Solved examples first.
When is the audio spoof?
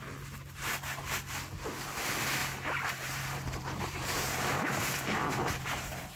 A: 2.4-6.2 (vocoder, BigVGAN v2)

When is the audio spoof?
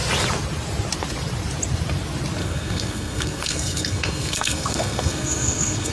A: 2.4-5.9 (codec, SNAC)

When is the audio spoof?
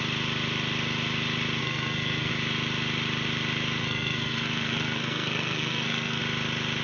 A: 1.6-2.3 (codec, SNAC); 3.8-6.2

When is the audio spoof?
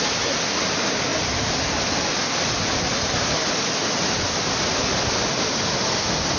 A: 1.1-3.1 (vocoder, BigVGAN v2)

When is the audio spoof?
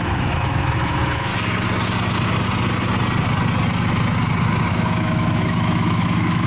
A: 0.0-1.3 (autoencoder, DAC-VAE); 4.7-6.5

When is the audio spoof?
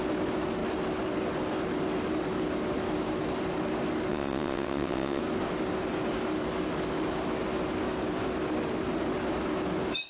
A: 4.1-5.2 (vocoder, WaveNeXt)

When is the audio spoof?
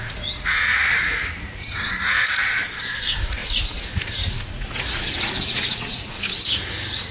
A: 0.0-7.1 (vocoder, Vocos)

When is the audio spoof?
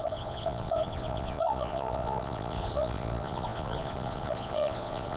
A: 0.0-5.2 (vocoder, Vocos)